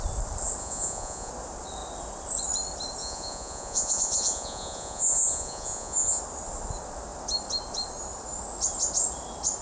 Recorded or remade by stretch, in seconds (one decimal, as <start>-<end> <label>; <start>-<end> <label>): 0.0-0.6 recorded; 0.6-1.3 remade; 1.3-3.0 recorded; 3.0-6.2 remade; 6.2-9.6 recorded